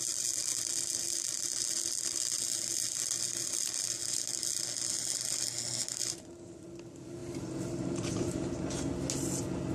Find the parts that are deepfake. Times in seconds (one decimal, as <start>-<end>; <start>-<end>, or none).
7.2-8.7